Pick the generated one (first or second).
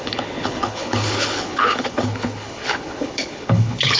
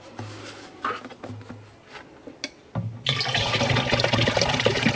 first